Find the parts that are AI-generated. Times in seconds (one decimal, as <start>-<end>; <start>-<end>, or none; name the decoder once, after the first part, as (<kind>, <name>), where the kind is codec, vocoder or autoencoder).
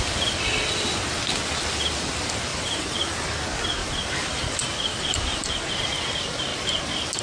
2.5-3.3 (vocoder, BigVGAN v2); 3.8-5.7